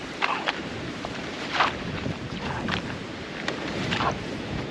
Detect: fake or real fake